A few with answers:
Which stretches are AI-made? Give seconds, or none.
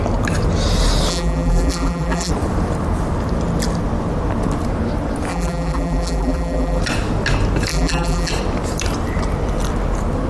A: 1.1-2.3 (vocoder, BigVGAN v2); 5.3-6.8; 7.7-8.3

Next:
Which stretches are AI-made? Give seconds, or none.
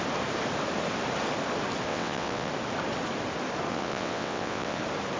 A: 1.9-2.5 (vocoder, WaveNeXt); 3.7-4.8